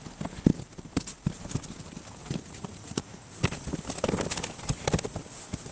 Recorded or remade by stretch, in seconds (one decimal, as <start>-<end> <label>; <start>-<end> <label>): 0.0-2.2 recorded; 2.2-3.3 remade; 3.3-5.7 recorded